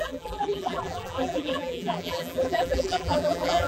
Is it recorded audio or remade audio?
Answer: remade